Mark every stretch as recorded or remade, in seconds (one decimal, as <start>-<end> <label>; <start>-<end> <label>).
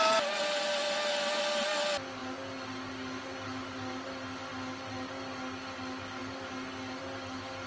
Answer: 0.0-7.7 recorded